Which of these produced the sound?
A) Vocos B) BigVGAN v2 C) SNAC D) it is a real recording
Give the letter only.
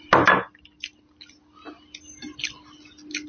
D